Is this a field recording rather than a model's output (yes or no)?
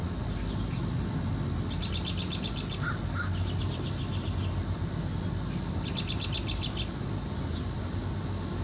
yes